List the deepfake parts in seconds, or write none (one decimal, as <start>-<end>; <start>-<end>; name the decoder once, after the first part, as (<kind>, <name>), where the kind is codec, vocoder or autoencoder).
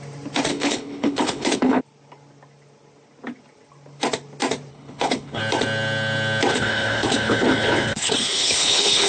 0.5-1.8 (codec, HILCodec); 4.7-5.4; 6.5-9.1